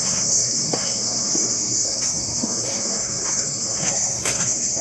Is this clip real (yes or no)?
no